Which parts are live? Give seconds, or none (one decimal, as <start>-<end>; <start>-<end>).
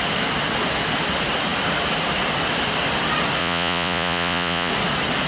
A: 0.0-3.4; 4.7-5.3